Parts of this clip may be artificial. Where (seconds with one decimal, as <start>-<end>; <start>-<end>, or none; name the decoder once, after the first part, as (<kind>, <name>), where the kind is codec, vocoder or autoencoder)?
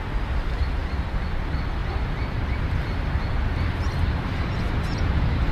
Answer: 1.8-5.1 (vocoder, BigVGAN v2)